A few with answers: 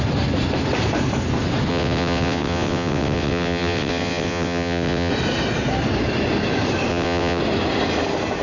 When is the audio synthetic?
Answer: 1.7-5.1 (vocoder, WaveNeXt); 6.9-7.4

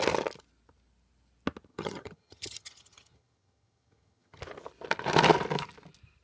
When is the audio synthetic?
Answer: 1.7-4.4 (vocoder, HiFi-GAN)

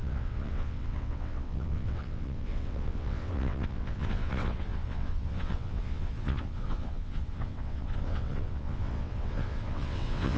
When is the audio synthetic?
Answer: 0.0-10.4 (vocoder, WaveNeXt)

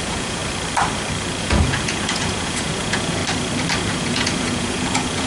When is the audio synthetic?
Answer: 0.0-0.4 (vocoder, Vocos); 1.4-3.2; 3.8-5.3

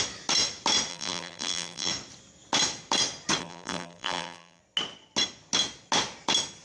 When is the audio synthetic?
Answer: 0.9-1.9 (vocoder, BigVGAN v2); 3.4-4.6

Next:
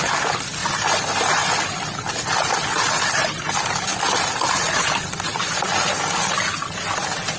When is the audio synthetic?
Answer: none

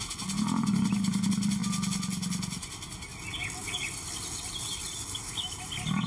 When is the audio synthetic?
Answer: none

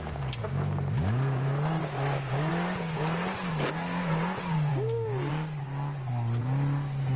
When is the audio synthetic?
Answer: 1.8-2.5 (codec, DAC); 4.7-5.3